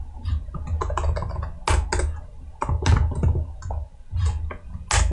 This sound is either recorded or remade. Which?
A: recorded